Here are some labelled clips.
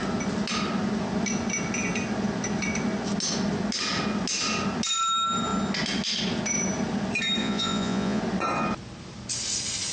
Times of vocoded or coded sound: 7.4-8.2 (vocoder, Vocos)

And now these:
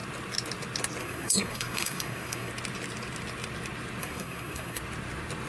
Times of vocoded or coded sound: 1.0-2.5 (codec, SNAC); 4.0-4.8

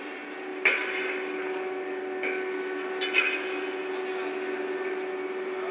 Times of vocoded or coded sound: none

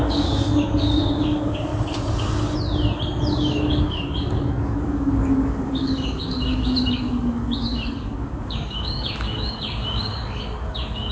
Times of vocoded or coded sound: 0.0-1.7 (codec, DAC); 3.3-11.1

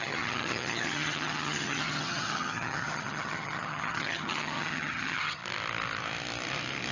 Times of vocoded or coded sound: 0.0-5.4 (vocoder, HiFi-GAN)

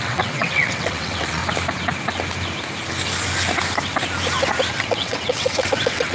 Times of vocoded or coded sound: 0.0-1.4 (vocoder, WaveNeXt); 4.7-6.1